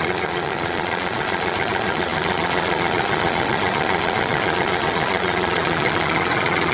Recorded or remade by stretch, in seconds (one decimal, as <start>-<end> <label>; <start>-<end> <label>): 0.0-6.7 remade